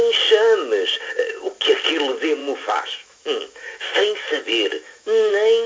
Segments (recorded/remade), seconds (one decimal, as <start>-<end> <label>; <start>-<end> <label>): 0.0-2.4 recorded; 2.4-5.3 remade; 5.3-5.7 recorded